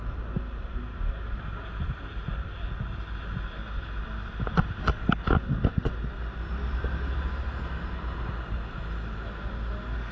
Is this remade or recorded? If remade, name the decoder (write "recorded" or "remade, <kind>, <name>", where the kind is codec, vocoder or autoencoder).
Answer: recorded